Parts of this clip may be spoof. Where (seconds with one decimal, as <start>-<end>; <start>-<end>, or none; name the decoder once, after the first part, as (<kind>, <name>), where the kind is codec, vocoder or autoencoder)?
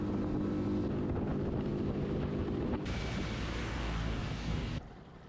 3.6-4.7 (codec, DAC)